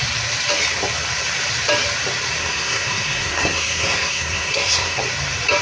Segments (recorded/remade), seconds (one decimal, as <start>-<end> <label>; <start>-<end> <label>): 0.0-2.4 recorded; 2.4-5.0 remade; 5.0-5.6 recorded